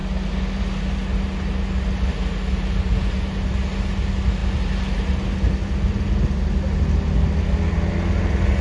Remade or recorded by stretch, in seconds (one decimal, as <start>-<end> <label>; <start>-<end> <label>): 0.0-8.6 recorded